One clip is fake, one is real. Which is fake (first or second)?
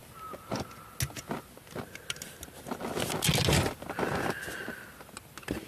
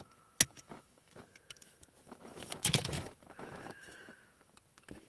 second